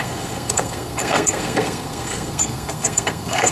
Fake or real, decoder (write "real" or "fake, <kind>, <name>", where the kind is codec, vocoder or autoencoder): fake, codec, SNAC